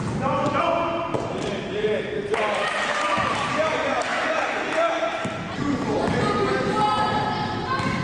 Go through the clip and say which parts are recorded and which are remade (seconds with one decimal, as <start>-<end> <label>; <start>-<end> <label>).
0.0-1.1 recorded; 1.1-3.5 remade; 3.5-8.0 recorded